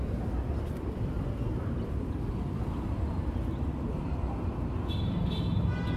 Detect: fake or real fake